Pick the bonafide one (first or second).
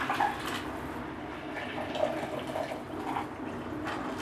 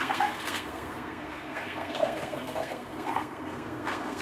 first